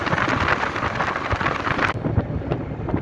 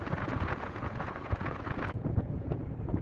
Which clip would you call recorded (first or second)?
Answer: first